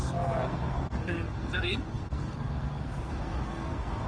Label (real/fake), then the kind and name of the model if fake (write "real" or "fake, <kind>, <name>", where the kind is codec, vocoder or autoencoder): fake, codec, SNAC